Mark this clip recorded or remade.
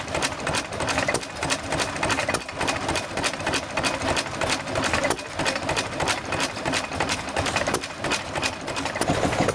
recorded